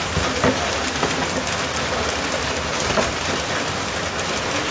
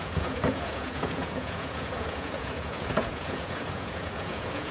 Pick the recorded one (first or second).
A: first